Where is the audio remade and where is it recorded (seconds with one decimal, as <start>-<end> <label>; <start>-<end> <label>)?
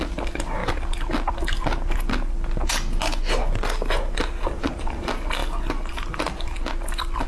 0.0-7.3 recorded